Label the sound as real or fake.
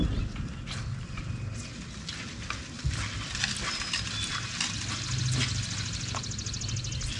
real